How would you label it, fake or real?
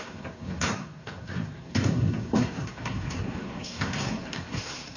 fake